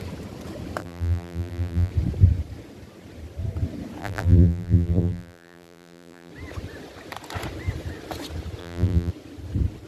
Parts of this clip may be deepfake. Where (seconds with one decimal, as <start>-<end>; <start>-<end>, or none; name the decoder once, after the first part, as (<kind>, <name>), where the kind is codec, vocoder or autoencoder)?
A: 0.8-1.9 (vocoder, BigVGAN v2); 4.0-6.3; 8.6-9.1